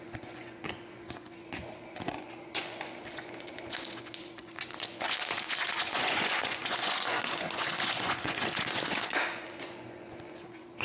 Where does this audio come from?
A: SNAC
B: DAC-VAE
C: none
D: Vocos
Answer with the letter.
D